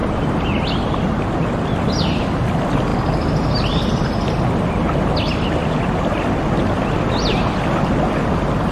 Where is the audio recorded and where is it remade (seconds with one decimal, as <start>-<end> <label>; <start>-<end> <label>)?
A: 0.0-8.7 recorded